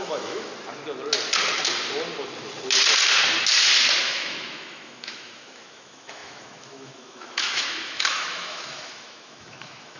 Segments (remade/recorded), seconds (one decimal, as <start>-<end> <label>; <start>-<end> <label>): 0.0-0.5 remade; 0.5-4.0 recorded; 4.0-10.0 remade